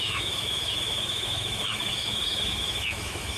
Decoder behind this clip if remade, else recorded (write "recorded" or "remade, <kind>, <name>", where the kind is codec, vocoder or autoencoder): remade, autoencoder, DAC-VAE